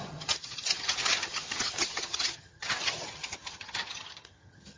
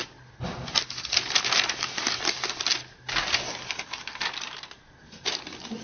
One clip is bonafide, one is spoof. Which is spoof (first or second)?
first